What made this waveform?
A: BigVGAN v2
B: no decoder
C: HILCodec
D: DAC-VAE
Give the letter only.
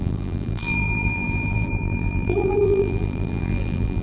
A